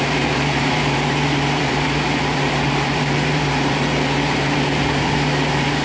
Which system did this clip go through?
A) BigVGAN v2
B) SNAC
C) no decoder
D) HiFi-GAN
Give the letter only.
A